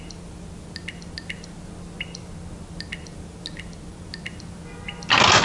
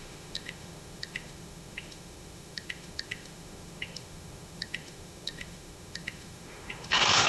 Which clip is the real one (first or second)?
first